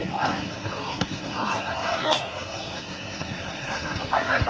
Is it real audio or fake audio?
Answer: fake